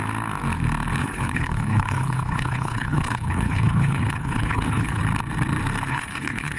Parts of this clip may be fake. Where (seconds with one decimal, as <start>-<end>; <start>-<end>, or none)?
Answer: 1.0-5.0; 5.9-6.6